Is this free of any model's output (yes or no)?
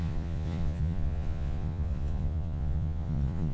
no